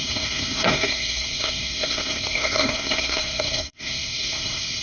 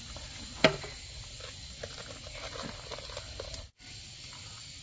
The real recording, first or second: second